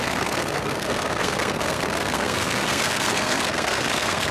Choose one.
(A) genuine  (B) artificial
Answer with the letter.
B